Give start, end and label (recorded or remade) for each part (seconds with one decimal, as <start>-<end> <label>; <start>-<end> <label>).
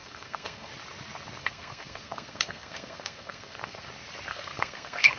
0.0-0.7 remade; 0.7-1.4 recorded; 1.4-3.9 remade; 3.9-4.3 recorded; 4.3-5.2 remade